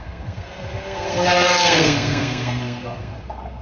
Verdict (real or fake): fake